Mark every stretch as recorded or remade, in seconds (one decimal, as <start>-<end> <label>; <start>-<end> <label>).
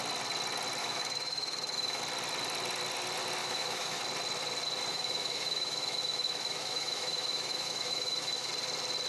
0.0-0.8 recorded; 0.8-2.0 remade; 2.0-3.4 recorded; 3.4-4.0 remade; 4.0-4.9 recorded; 4.9-8.5 remade; 8.5-9.1 recorded